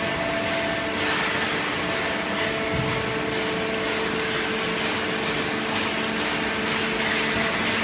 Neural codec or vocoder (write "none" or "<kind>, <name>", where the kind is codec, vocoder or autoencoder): none